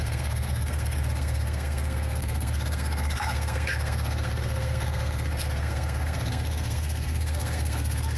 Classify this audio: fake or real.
fake